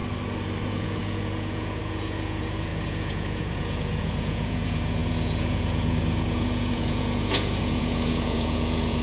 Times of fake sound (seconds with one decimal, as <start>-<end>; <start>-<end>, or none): 0.6-9.0